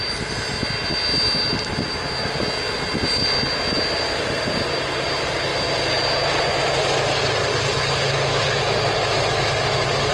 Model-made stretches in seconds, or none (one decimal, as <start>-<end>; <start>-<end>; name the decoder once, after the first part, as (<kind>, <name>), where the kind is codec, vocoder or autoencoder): none